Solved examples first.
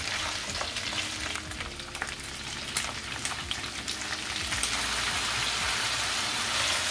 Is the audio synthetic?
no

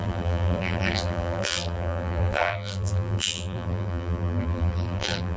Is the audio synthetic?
yes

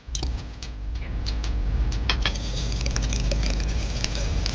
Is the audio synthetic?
no